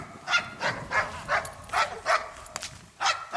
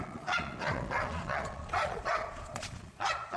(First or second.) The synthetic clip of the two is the second